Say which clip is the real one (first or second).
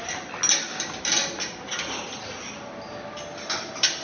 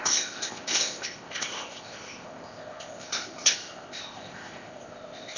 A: first